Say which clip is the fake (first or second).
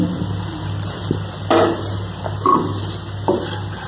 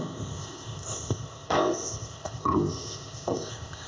second